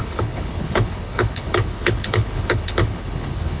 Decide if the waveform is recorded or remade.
remade